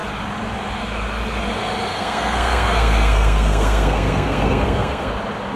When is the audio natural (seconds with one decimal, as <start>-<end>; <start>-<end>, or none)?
0.0-1.9; 5.1-5.6